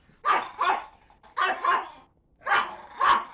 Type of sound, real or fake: real